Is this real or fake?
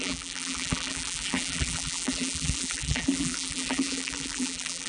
fake